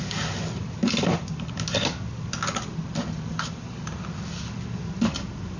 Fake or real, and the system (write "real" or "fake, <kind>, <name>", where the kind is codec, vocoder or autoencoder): real